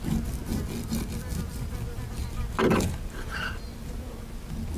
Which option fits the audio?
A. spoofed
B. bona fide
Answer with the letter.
B